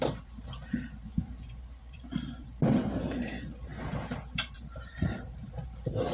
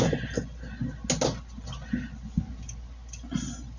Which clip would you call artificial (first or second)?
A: first